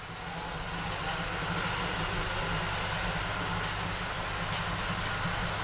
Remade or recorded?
recorded